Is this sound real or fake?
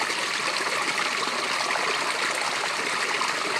real